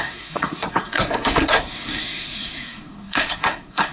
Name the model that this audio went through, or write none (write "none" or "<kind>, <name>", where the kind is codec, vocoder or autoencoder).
codec, SNAC